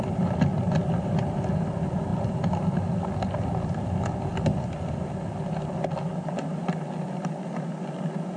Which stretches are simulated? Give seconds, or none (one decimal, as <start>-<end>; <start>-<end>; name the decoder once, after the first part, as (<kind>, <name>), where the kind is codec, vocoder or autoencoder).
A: none